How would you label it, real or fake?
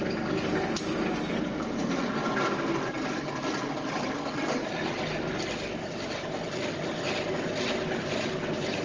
real